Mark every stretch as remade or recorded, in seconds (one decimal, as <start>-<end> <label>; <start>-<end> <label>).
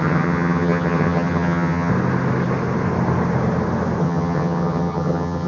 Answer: 0.0-1.9 remade; 1.9-4.0 recorded; 4.0-5.5 remade